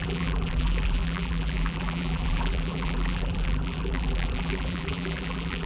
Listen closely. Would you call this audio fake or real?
fake